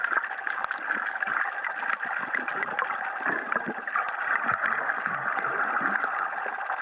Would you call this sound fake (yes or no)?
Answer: no